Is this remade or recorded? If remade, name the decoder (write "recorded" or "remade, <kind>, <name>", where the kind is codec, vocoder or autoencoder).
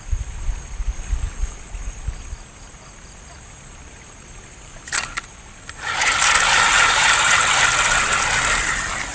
recorded